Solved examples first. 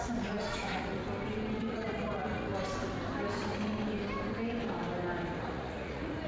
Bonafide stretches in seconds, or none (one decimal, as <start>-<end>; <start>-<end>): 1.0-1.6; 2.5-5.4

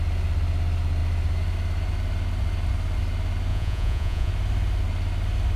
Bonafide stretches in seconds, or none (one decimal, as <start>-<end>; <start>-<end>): 0.0-3.5; 4.3-5.6

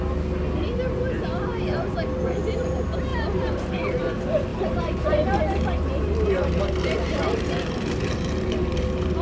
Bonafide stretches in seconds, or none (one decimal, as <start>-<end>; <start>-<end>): 0.0-3.1; 4.0-4.5

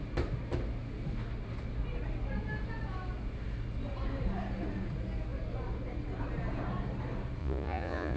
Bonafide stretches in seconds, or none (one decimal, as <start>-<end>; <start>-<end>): 0.0-7.4

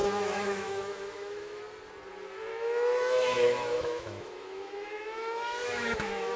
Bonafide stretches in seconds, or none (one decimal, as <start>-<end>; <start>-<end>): 1.6-2.5

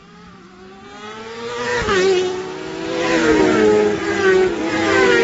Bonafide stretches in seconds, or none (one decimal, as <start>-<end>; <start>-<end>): 0.0-5.2

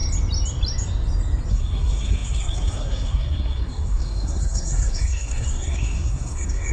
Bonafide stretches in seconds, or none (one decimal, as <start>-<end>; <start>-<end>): 0.0-1.5

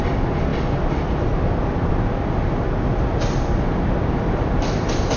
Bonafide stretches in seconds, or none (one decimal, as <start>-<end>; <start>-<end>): 0.0-5.2